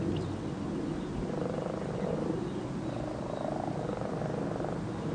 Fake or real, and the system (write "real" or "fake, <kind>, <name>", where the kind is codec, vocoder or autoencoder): real